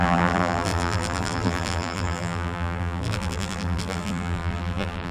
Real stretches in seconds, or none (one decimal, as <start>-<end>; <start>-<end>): none